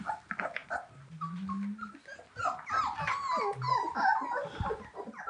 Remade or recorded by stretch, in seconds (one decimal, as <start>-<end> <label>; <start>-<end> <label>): 0.0-5.3 recorded